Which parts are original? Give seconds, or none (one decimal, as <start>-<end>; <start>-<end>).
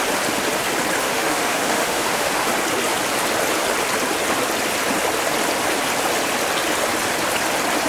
0.0-1.0; 2.5-7.9